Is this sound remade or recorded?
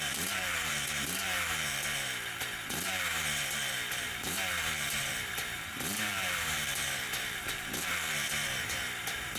remade